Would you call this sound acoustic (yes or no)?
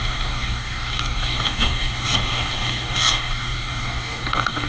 no